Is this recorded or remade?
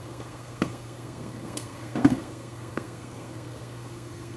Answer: remade